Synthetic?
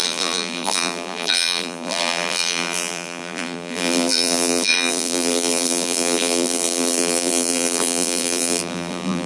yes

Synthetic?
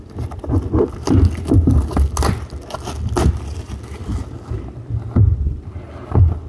no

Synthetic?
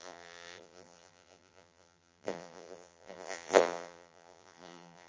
yes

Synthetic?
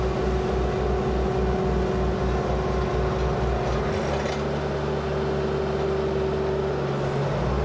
no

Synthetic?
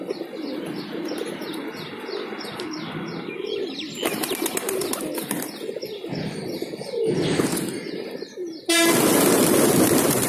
no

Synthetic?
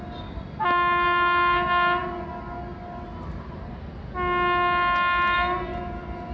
no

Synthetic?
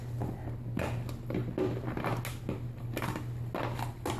no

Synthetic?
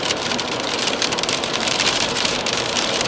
yes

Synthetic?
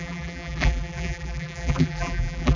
yes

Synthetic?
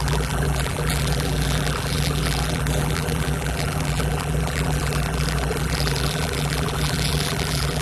yes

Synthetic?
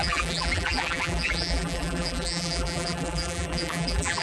yes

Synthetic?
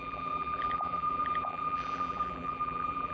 yes